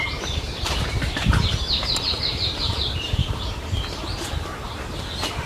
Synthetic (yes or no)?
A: yes